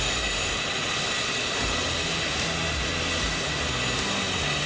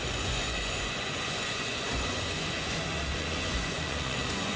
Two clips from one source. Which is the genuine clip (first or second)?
first